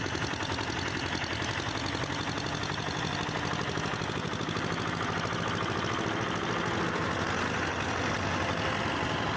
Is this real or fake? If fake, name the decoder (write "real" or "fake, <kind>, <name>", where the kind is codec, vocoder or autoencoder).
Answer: real